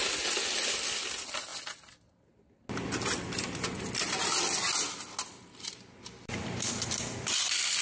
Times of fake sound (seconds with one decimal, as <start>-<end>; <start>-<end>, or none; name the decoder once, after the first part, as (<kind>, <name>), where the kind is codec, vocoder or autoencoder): none